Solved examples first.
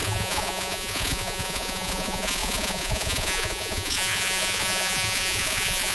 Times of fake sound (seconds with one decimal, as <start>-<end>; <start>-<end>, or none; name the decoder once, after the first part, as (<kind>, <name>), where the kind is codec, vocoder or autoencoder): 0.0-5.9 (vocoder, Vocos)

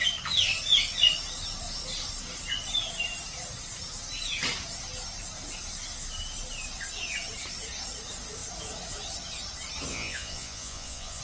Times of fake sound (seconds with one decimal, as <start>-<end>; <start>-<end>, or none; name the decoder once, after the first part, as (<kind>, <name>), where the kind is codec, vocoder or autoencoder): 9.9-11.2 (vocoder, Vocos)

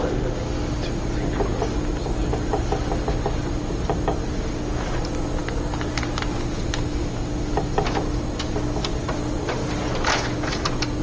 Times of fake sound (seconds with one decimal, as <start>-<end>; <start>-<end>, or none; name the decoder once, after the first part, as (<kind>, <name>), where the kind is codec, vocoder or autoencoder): none

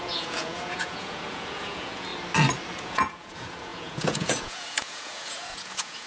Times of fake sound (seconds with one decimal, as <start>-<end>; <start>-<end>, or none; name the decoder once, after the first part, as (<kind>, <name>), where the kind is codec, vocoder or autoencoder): 0.0-2.1 (vocoder, Vocos); 2.7-6.1

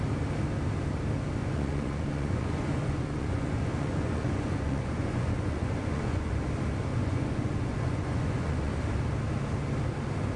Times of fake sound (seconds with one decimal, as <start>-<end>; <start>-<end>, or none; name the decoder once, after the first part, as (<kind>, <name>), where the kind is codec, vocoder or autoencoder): 1.4-6.3 (vocoder, Vocos); 6.9-8.7

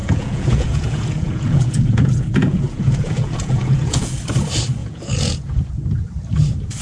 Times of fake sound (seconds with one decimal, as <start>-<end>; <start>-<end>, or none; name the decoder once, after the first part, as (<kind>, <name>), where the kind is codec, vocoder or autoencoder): 0.0-4.1 (vocoder, Vocos); 4.8-5.7

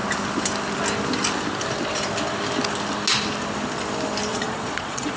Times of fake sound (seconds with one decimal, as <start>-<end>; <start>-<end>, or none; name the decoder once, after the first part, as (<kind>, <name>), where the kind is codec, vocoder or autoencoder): 4.3-5.2 (vocoder, Vocos)